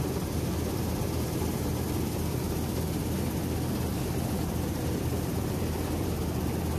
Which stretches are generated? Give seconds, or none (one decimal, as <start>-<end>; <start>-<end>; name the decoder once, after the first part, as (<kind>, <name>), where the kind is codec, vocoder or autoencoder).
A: 0.5-1.6 (vocoder, BigVGAN v2); 3.9-5.0